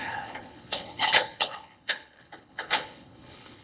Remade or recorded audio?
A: remade